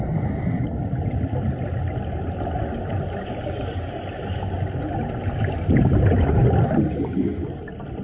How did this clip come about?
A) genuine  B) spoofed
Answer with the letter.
A